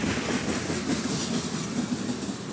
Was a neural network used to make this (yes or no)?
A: no